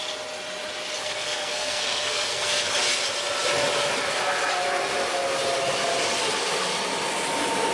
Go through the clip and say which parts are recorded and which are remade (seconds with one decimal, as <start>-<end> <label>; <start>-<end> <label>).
0.0-1.0 recorded; 1.0-2.7 remade; 2.7-7.7 recorded